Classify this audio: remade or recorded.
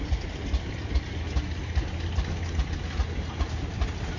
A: recorded